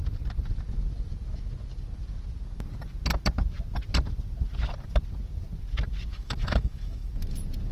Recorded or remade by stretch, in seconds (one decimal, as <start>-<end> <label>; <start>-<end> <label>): 0.0-6.1 recorded; 6.1-7.1 remade; 7.1-7.7 recorded